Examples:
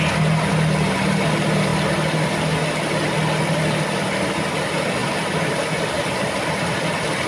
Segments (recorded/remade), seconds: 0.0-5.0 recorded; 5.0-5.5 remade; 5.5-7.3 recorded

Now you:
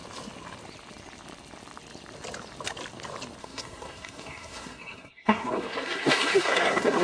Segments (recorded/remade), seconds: 0.0-3.4 recorded; 3.4-7.0 remade

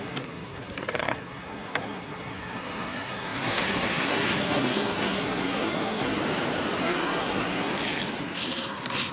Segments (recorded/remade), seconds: 0.0-6.2 remade; 6.2-6.8 recorded; 6.8-7.7 remade; 7.7-8.2 recorded; 8.2-9.1 remade

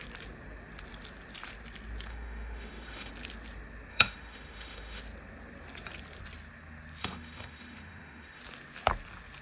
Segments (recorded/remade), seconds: 0.0-2.1 recorded; 2.1-3.1 remade; 3.1-3.9 recorded; 3.9-5.0 remade; 5.0-7.0 recorded; 7.0-8.4 remade; 8.4-9.4 recorded